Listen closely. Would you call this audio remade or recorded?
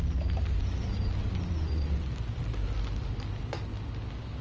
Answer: recorded